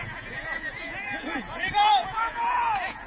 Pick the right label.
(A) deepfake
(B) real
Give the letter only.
A